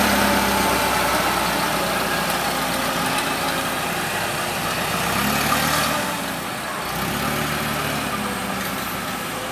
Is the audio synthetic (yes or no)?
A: no